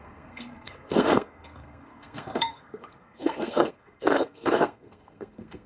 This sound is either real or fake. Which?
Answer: fake